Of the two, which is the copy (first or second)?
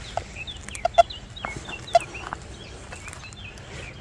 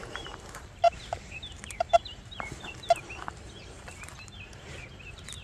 second